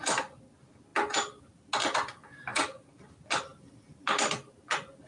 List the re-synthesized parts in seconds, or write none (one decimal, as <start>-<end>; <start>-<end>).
2.5-3.1